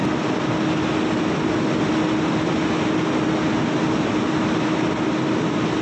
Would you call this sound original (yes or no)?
yes